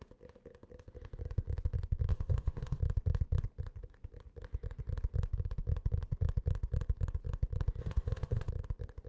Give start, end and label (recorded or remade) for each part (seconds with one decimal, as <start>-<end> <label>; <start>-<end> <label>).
0.0-2.1 recorded; 2.1-2.8 remade; 2.8-7.8 recorded; 7.8-8.5 remade; 8.5-9.1 recorded